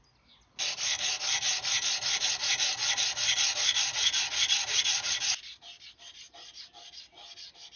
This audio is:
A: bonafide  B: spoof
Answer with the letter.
A